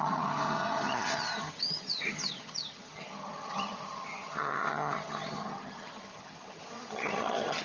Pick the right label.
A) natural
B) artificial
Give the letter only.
B